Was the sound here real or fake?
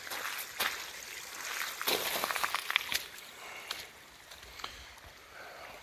real